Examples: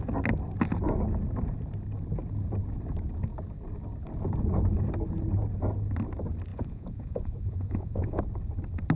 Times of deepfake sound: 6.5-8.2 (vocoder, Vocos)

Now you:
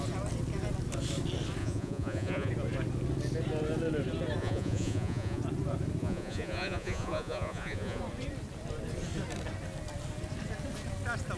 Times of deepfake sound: 1.6-2.5 (vocoder, Vocos); 4.4-5.4; 6.0-8.0